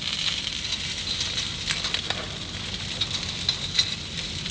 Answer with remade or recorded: recorded